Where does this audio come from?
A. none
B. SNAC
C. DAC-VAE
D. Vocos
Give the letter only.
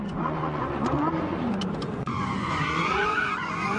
D